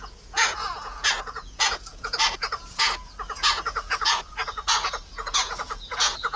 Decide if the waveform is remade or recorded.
remade